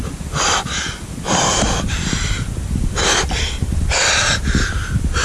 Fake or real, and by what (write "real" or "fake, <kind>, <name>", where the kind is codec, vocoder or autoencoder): fake, vocoder, BigVGAN v2